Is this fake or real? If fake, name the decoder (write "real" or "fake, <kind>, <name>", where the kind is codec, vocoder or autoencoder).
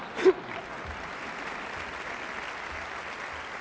real